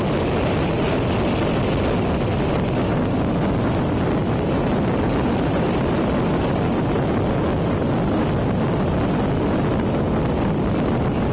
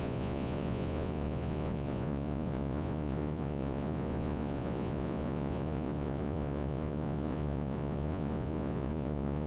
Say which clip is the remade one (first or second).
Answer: second